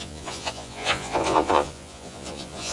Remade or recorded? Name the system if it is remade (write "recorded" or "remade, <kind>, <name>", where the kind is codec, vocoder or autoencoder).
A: remade, vocoder, Vocos